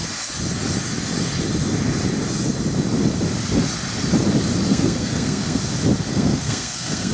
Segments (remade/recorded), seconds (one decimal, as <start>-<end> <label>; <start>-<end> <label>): 0.0-4.7 recorded; 4.7-5.6 remade; 5.6-6.1 recorded; 6.1-7.1 remade